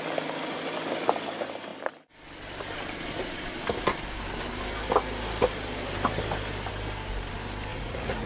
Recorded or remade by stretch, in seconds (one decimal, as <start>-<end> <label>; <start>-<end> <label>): 0.0-7.7 recorded; 7.7-8.3 remade